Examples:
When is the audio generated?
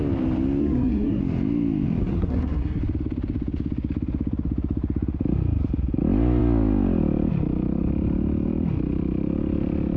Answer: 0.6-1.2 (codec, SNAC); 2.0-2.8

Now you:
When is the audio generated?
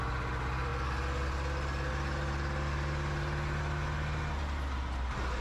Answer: none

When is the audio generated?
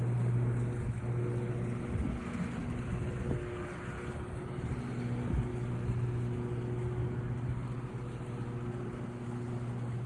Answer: none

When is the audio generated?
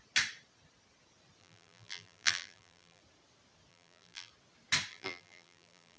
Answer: 1.4-3.0 (vocoder, BigVGAN v2); 3.7-4.3; 4.9-6.0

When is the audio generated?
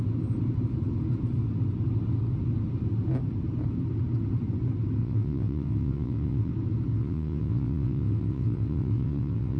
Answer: 5.0-6.5 (vocoder, WaveNeXt); 6.9-9.6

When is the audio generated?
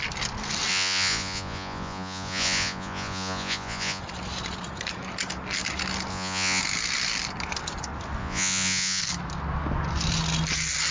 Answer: 0.7-4.0 (vocoder, Vocos); 6.1-6.6; 8.2-9.0